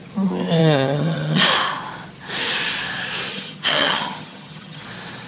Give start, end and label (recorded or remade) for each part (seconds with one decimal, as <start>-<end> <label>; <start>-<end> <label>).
0.0-0.6 recorded; 0.6-1.4 remade; 1.4-3.3 recorded; 3.3-4.8 remade; 4.8-5.3 recorded